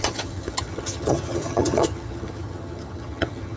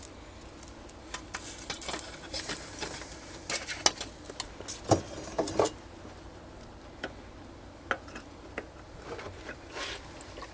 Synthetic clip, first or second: first